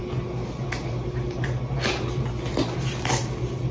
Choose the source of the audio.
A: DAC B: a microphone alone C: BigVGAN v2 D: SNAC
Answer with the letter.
B